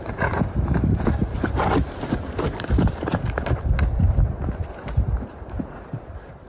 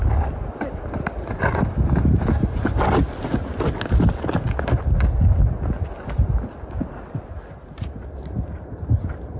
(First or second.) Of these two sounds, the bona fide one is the second